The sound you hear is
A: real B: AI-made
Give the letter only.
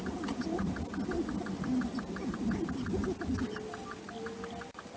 A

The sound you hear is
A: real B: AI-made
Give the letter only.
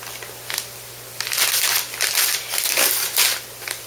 A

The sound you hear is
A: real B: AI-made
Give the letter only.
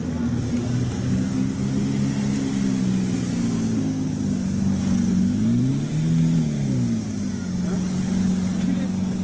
A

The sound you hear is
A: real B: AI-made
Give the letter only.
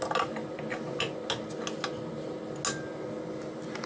A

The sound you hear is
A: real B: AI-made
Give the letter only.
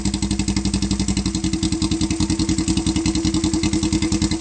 A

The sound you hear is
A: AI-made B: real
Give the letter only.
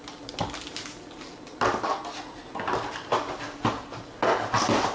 B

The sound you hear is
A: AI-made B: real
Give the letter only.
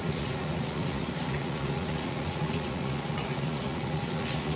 A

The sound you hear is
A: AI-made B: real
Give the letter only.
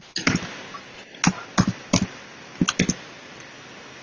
B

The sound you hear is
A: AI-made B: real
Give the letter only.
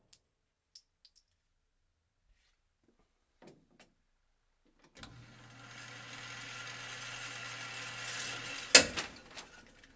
B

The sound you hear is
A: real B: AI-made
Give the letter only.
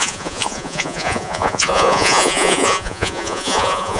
B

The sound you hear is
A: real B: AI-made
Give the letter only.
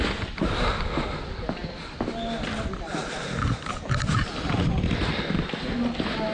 A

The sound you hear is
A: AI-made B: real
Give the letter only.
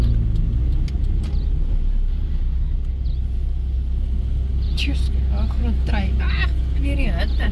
B